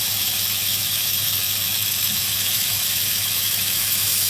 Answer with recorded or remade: remade